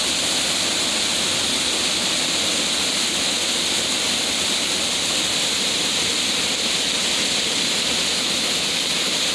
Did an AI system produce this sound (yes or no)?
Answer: no